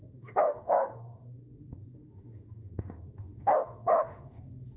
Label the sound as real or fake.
fake